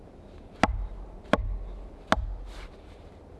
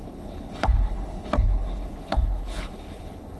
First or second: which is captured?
first